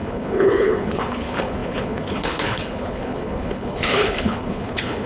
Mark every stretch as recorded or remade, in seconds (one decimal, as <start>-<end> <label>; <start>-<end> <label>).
0.0-5.1 remade